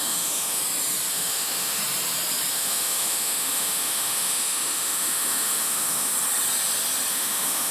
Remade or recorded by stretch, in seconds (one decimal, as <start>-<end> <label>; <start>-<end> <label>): 0.0-0.6 remade; 0.6-1.1 recorded; 1.1-1.8 remade; 1.8-2.5 recorded; 2.5-6.1 remade; 6.1-7.1 recorded; 7.1-7.7 remade